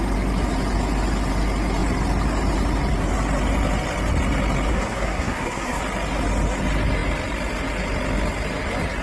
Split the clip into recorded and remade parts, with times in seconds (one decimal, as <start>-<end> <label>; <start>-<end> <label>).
0.0-4.7 recorded; 4.7-5.8 remade; 5.8-9.0 recorded

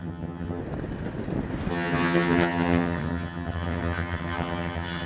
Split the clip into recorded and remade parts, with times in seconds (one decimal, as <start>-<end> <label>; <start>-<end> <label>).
0.0-0.6 remade; 0.6-1.7 recorded; 1.7-5.1 remade